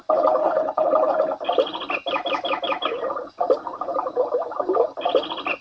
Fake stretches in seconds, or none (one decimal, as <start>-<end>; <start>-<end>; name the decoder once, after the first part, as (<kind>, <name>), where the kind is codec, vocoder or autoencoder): 0.4-1.1 (codec, HILCodec)